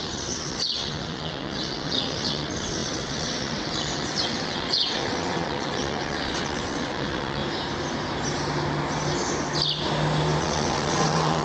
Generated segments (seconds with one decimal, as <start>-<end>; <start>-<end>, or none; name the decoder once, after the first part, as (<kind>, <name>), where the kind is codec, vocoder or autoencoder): 0.0-7.4 (vocoder, WaveNeXt); 10.4-11.4